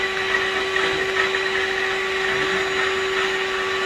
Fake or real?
real